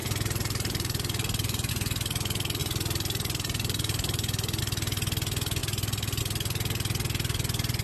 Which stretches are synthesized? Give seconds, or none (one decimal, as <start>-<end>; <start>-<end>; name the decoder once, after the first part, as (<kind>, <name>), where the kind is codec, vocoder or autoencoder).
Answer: 0.0-1.7 (vocoder, BigVGAN v2); 2.6-4.6; 5.6-6.2